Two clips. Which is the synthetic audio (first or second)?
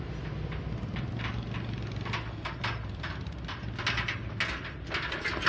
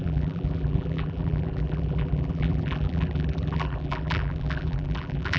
second